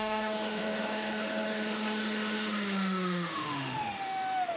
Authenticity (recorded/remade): remade